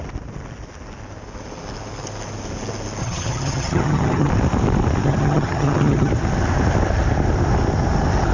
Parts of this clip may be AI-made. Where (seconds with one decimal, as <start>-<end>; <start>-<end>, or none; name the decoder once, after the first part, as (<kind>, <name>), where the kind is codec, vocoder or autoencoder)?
3.0-4.3 (vocoder, HiFi-GAN); 5.0-6.1